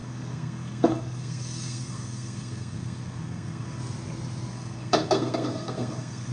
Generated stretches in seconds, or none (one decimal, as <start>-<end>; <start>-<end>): 0.0-3.8; 4.5-6.3